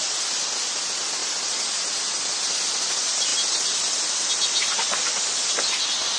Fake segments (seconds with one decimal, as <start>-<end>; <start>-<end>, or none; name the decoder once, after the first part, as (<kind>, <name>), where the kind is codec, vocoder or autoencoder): none